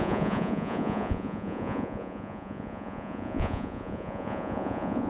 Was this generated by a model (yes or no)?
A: yes